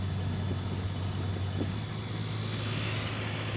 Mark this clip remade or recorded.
recorded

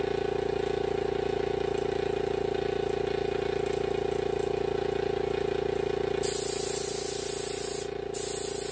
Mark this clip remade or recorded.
recorded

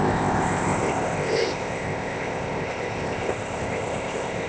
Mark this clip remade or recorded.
remade